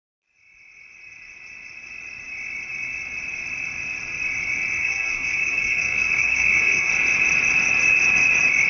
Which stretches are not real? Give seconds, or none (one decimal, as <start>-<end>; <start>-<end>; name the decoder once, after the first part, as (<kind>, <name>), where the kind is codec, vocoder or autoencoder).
4.8-6.9 (codec, SNAC)